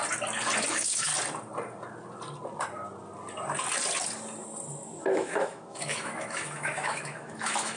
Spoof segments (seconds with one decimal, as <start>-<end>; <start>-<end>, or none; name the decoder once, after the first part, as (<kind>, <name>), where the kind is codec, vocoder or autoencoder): 0.7-1.1 (autoencoder, DAC-VAE); 5.0-7.8